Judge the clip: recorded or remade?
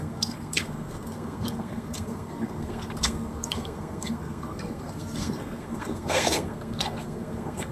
remade